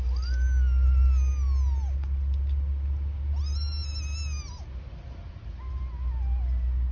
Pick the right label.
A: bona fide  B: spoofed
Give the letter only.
A